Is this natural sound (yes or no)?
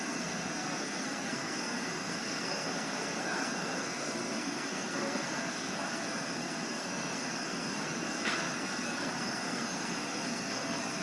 no